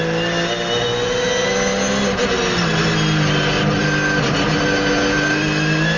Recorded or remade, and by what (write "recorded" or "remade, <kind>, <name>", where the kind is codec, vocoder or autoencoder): recorded